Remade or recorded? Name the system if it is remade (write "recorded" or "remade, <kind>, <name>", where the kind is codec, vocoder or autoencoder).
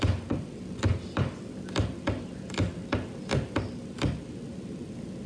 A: recorded